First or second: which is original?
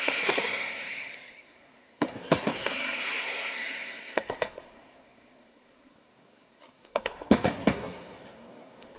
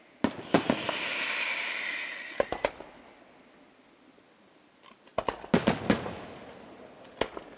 second